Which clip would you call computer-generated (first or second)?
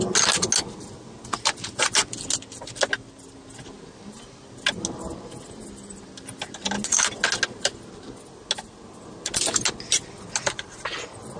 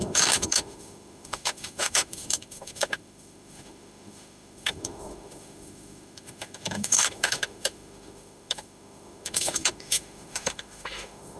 second